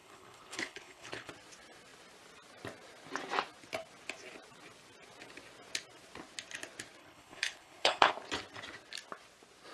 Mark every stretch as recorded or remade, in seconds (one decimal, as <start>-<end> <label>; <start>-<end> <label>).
0.0-1.3 remade; 1.3-7.0 recorded; 7.0-8.1 remade; 8.1-9.7 recorded